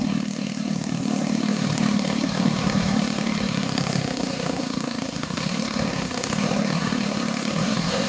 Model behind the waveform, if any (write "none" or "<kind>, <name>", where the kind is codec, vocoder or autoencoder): codec, SNAC